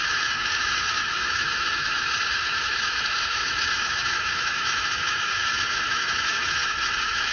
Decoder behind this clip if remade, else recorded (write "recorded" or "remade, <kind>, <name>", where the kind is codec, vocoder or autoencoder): remade, autoencoder, DAC-VAE